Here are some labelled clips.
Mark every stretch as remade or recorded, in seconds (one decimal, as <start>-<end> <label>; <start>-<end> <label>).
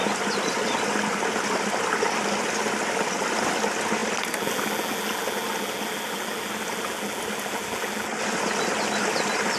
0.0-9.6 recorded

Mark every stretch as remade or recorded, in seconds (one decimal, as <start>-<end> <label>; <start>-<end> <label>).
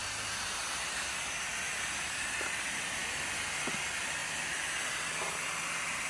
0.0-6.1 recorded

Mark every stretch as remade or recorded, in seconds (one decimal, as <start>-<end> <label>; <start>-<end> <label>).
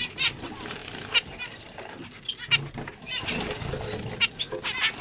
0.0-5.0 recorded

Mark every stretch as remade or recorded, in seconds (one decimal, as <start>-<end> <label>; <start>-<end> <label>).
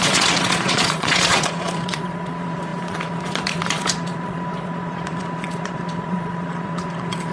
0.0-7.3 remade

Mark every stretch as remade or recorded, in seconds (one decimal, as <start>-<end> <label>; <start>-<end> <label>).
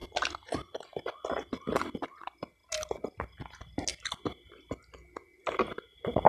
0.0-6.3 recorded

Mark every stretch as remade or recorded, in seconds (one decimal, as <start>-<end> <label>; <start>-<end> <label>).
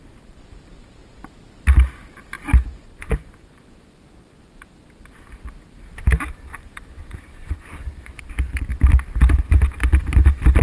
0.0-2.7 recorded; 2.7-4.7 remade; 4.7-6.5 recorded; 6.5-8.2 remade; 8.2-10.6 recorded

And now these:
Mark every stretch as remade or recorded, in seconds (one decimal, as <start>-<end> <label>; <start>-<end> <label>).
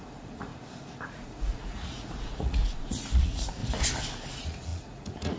0.0-0.5 remade; 0.5-1.1 recorded; 1.1-3.6 remade; 3.6-4.3 recorded; 4.3-5.4 remade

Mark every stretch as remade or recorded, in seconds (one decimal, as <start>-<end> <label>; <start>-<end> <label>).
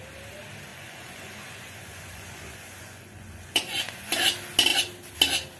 0.0-0.7 recorded; 0.7-4.1 remade; 4.1-5.6 recorded